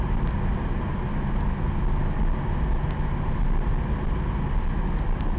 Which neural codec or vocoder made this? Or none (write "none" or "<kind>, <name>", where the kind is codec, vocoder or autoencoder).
none